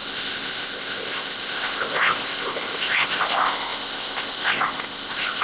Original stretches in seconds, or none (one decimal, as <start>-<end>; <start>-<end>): none